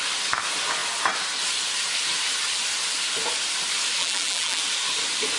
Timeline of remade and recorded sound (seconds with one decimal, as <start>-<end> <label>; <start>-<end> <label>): 0.0-4.0 recorded; 4.0-4.6 remade; 4.6-5.4 recorded